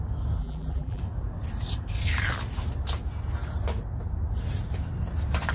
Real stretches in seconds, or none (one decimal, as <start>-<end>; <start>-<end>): 0.0-0.4; 1.0-5.5